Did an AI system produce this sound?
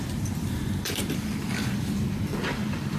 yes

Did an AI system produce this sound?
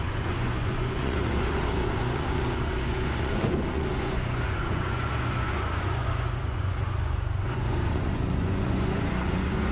yes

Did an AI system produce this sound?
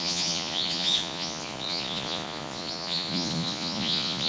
yes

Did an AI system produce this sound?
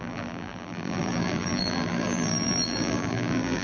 yes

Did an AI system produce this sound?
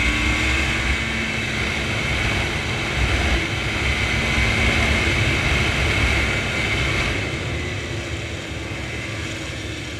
no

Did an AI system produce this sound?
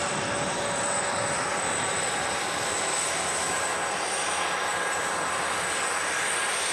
no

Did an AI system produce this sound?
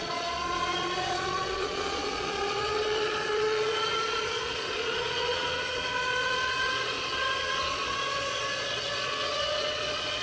yes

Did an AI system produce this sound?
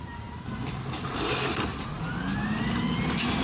no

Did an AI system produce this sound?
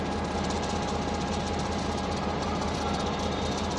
no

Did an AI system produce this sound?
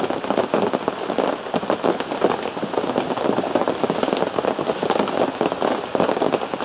no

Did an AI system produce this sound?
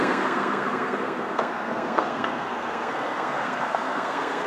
yes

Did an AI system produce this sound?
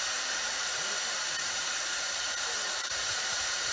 yes